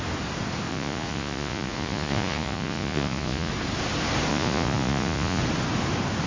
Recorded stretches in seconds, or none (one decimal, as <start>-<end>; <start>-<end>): 0.0-0.7; 3.5-4.3; 5.4-6.3